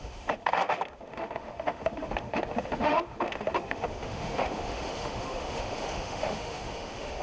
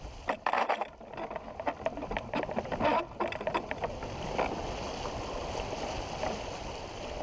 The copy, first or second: first